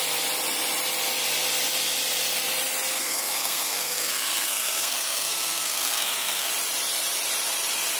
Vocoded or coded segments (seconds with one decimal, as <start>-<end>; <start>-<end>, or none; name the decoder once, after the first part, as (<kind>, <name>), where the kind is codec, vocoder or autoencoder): 2.9-6.5 (codec, SNAC)